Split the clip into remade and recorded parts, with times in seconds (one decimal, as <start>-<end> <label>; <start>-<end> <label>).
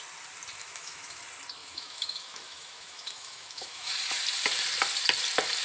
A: 0.0-0.6 recorded; 0.6-1.2 remade; 1.2-1.6 recorded; 1.6-3.9 remade; 3.9-5.6 recorded